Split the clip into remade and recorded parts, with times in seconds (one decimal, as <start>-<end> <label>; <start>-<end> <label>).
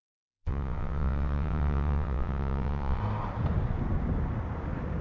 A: 0.0-3.0 remade; 3.0-5.0 recorded